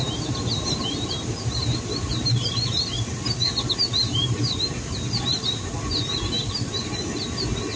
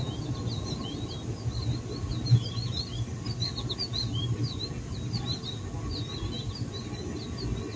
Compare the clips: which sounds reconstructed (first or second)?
first